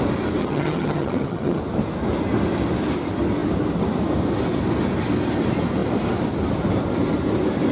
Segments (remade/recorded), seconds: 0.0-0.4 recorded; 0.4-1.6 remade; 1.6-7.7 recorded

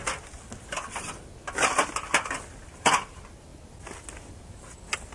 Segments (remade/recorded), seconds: 0.0-5.1 recorded

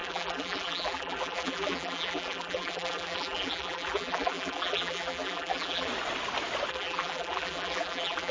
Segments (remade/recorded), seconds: 0.0-5.9 remade; 5.9-6.7 recorded; 6.7-8.3 remade

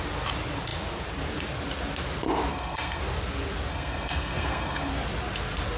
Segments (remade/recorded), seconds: 0.0-2.5 recorded; 2.5-3.0 remade; 3.0-3.7 recorded; 3.7-4.9 remade; 4.9-5.8 recorded

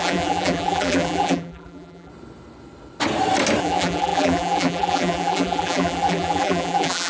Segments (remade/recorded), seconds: 0.0-2.1 remade; 2.1-3.6 recorded; 3.6-7.1 remade